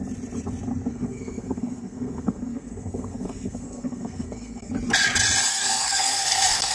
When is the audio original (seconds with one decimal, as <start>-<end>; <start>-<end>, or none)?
0.0-0.9; 4.7-5.5